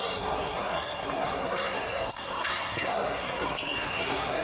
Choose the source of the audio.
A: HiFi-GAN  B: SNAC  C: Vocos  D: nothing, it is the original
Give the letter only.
B